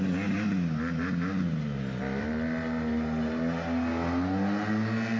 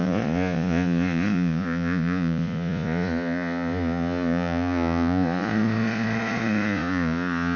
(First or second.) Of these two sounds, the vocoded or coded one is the second